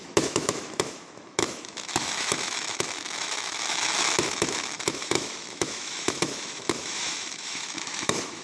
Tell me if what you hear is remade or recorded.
remade